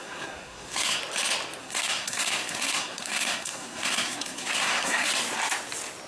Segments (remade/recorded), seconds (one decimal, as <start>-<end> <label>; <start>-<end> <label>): 0.0-1.0 remade; 1.0-1.6 recorded; 1.6-5.1 remade; 5.1-6.1 recorded